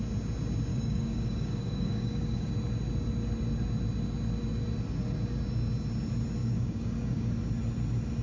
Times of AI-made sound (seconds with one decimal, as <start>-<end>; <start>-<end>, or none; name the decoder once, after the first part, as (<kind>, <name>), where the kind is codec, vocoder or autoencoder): 0.7-2.5 (codec, DAC); 6.4-7.3

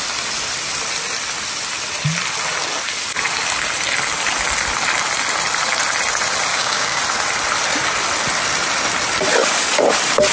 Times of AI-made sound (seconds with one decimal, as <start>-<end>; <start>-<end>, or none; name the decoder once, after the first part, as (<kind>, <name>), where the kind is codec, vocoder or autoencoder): 6.5-7.0 (codec, DAC)

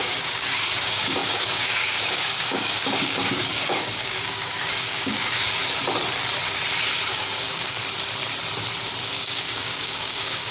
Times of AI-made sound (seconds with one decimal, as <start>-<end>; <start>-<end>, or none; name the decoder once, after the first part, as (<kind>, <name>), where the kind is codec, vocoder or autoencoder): 0.0-5.6 (codec, DAC); 7.1-7.8; 9.0-10.5

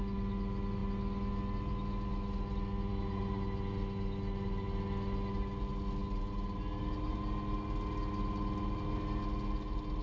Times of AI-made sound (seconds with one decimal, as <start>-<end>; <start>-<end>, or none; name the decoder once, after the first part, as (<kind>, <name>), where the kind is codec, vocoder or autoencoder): none

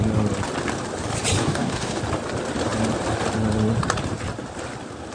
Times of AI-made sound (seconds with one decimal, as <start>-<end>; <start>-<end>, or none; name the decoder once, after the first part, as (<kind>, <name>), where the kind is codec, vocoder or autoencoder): 1.4-2.0 (codec, DAC)